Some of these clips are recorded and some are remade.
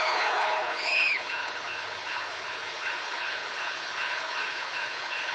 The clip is remade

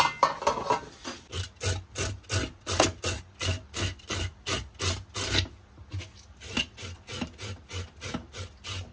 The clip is recorded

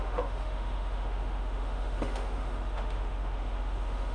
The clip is remade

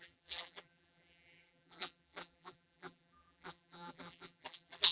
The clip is remade